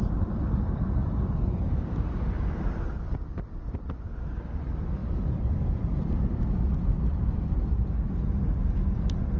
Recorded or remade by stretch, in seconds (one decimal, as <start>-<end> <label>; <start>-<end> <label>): 0.0-9.4 remade